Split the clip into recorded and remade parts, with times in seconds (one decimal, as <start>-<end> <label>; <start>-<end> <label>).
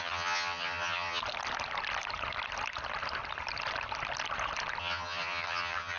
0.0-1.2 remade; 1.2-4.8 recorded; 4.8-6.0 remade